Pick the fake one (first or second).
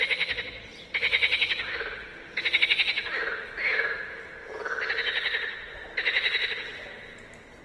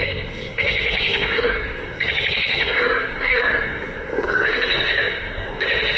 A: second